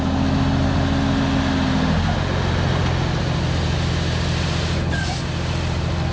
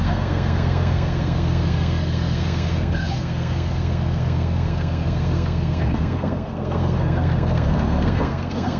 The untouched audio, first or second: first